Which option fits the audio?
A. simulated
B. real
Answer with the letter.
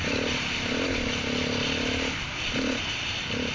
B